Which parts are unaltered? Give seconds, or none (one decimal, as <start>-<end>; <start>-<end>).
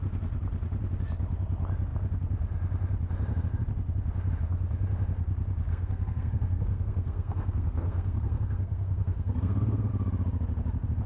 0.0-5.7; 9.9-11.1